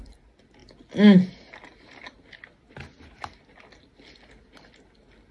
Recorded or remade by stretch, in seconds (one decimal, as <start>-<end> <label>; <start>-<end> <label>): 0.0-5.3 recorded